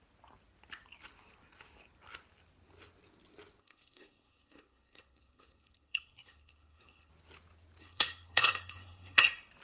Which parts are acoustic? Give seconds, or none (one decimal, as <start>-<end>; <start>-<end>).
0.0-3.6; 7.1-7.8; 9.2-9.6